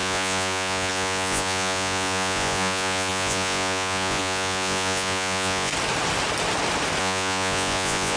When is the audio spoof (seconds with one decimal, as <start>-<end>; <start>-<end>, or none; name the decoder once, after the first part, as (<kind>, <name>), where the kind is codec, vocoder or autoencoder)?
0.0-5.7 (vocoder, Vocos); 7.0-8.2